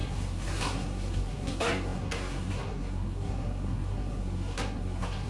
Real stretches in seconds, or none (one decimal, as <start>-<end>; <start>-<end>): none